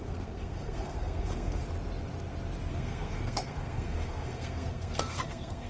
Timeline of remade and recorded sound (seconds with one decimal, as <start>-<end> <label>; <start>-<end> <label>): 0.0-1.6 remade; 1.6-2.7 recorded; 2.7-5.7 remade